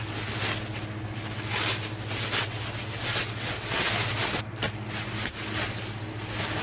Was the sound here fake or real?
real